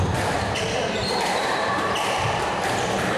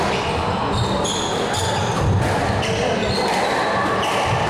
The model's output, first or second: first